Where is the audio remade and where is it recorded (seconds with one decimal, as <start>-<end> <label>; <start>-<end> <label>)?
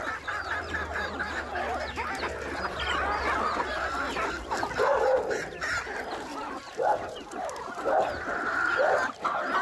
0.0-0.9 recorded; 0.9-2.2 remade; 2.2-6.3 recorded; 6.3-8.1 remade; 8.1-9.6 recorded